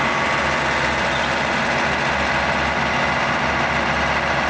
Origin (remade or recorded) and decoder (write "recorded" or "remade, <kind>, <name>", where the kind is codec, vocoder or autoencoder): recorded